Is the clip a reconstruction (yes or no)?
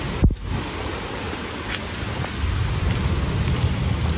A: no